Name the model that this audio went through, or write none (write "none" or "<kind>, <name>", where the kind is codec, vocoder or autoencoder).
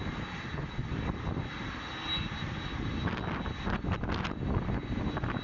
none